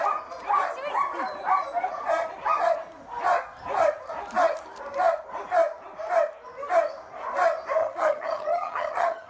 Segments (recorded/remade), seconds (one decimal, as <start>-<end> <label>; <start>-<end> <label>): 0.0-7.8 recorded; 7.8-9.3 remade